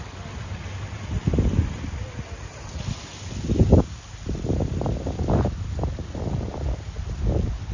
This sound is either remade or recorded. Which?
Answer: recorded